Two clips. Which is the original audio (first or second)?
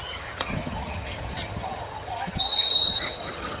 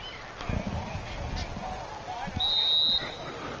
second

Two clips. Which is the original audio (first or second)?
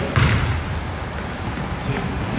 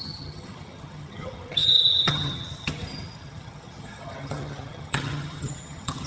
first